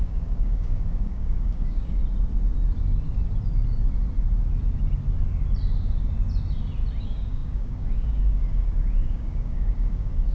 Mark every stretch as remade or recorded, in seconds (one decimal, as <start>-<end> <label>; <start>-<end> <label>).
0.0-2.0 remade; 2.0-7.0 recorded; 7.0-10.3 remade

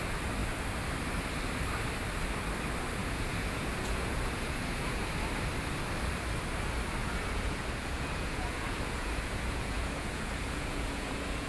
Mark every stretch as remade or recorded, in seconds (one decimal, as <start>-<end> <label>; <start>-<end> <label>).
0.0-3.0 recorded; 3.0-5.1 remade; 5.1-7.0 recorded; 7.0-11.5 remade

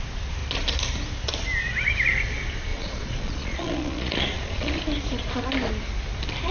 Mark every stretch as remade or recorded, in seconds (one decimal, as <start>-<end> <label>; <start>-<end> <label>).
0.0-2.7 recorded; 2.7-4.8 remade; 4.8-6.5 recorded

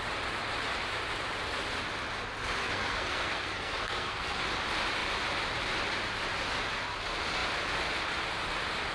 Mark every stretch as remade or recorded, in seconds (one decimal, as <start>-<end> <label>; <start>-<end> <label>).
0.0-2.6 recorded; 2.6-4.4 remade; 4.4-8.9 recorded